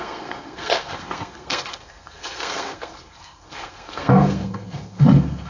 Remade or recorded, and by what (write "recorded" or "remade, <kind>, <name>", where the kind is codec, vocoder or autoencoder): remade, codec, SNAC